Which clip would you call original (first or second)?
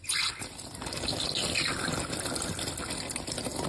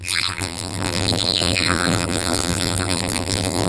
first